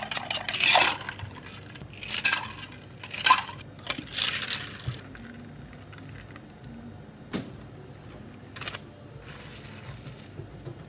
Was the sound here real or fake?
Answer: real